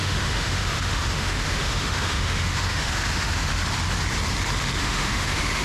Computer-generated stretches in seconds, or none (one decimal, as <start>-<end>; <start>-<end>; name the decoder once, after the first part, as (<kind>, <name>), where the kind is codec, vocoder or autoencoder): 0.0-3.5 (autoencoder, DAC-VAE); 4.8-5.6